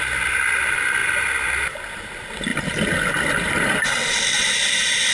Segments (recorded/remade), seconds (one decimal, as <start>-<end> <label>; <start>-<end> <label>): 0.0-5.1 recorded